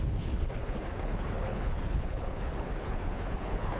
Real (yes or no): no